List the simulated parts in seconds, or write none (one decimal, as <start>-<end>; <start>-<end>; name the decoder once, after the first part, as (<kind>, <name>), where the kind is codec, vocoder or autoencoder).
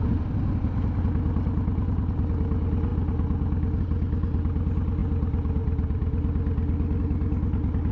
none